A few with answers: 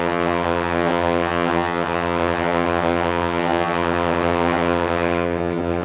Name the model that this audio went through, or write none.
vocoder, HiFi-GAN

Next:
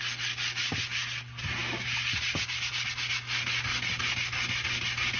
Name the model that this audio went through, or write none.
none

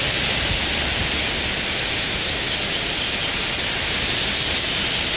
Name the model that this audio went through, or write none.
none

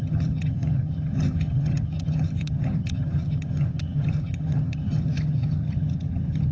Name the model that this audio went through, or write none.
vocoder, HiFi-GAN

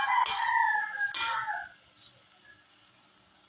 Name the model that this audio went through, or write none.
none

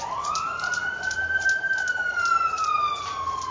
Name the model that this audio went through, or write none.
none